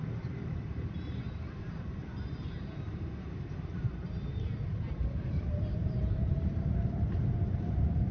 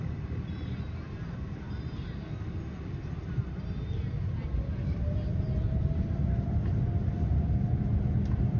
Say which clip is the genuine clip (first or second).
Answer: second